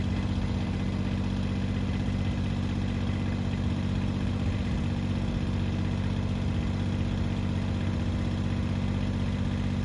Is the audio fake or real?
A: real